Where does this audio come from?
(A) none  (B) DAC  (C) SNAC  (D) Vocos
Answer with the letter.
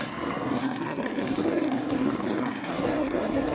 C